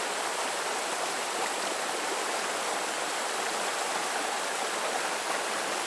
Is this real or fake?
real